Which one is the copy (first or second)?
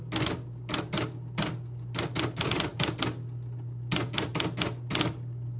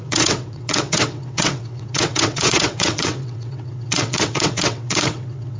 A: second